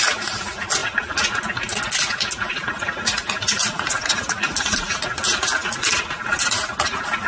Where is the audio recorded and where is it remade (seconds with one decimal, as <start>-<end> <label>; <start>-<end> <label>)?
0.0-7.3 recorded